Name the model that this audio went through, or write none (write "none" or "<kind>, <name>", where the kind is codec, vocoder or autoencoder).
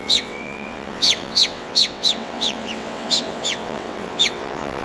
vocoder, WaveNeXt